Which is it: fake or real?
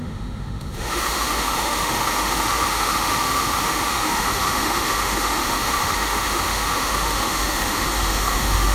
fake